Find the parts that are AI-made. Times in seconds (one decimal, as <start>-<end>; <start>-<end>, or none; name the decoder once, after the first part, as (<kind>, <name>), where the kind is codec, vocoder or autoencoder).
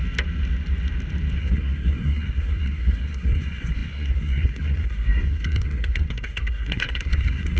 1.4-7.6 (codec, SNAC)